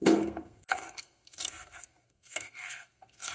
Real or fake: fake